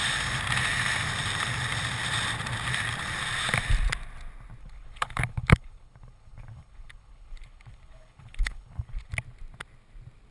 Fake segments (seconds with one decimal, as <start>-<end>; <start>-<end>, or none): 4.6-9.1